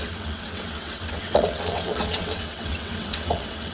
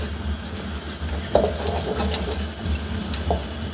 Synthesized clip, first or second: first